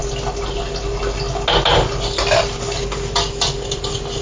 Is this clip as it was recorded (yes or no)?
yes